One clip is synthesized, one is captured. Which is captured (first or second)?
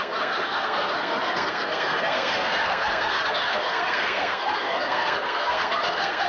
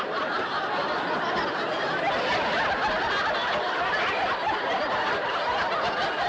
second